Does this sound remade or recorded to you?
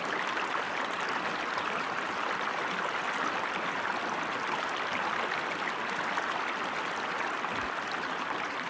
recorded